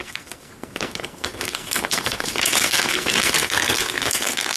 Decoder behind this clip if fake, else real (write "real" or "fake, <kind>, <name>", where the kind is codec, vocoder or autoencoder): fake, codec, SNAC